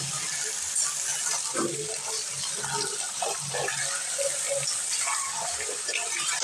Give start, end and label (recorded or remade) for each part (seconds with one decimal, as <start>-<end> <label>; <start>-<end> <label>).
0.0-1.1 recorded; 1.1-4.5 remade; 4.5-6.4 recorded